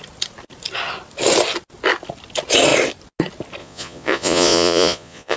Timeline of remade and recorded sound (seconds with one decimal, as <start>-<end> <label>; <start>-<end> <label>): 0.0-3.6 recorded; 3.6-5.4 remade